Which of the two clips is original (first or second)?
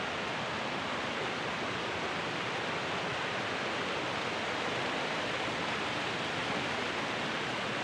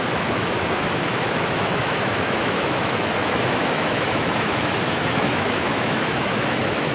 first